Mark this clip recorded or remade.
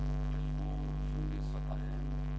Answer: remade